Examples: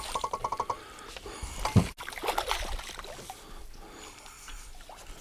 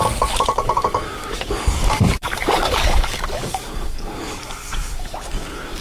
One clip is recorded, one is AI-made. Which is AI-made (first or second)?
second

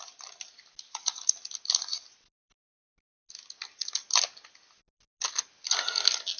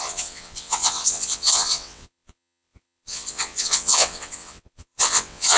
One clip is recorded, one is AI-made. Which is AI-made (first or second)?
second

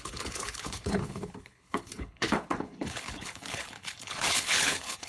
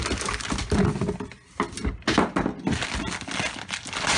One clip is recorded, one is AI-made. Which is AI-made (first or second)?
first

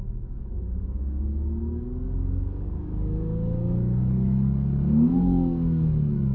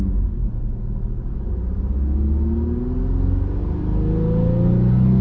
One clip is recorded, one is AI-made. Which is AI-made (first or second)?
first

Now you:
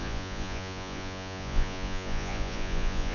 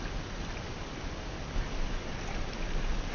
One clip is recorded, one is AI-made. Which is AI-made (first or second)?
first